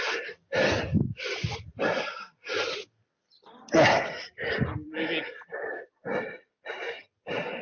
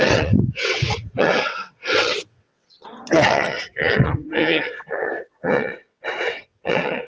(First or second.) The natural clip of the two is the first